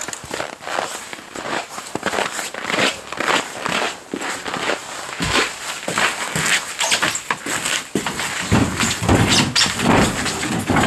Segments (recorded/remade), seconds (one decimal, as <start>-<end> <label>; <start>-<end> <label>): 0.0-1.1 recorded; 1.1-3.0 remade; 3.0-4.8 recorded; 4.8-5.6 remade; 5.6-10.9 recorded

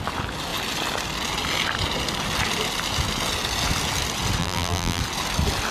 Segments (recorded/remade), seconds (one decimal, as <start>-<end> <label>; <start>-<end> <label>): 0.0-4.4 recorded; 4.4-5.0 remade; 5.0-5.7 recorded

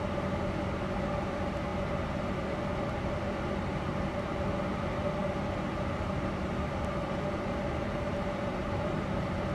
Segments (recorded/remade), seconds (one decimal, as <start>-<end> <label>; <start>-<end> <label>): 0.0-8.5 recorded; 8.5-9.5 remade

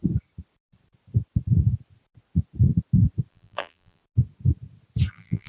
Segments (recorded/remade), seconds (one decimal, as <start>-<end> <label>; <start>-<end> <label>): 0.0-3.3 recorded; 3.3-4.0 remade; 4.0-5.1 recorded; 5.1-5.5 remade

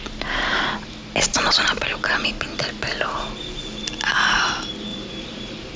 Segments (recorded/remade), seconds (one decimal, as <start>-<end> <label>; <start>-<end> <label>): 0.0-4.9 recorded; 4.9-5.8 remade